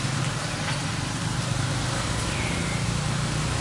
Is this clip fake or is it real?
real